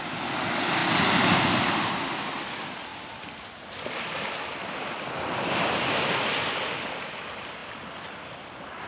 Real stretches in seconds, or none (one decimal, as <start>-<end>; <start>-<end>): 0.0-8.9